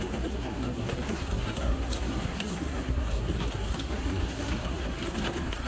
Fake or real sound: fake